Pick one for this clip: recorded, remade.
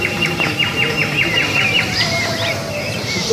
remade